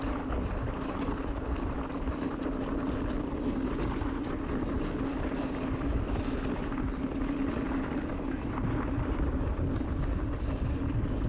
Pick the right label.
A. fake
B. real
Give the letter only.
B